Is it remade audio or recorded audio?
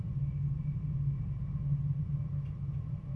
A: recorded